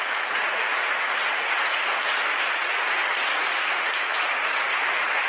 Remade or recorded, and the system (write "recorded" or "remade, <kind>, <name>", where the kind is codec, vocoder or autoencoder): remade, vocoder, Vocos